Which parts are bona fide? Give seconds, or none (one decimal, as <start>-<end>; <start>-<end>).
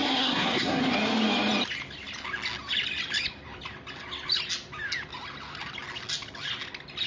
0.8-7.1